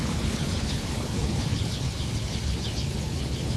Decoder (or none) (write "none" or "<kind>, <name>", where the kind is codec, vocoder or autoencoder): codec, HILCodec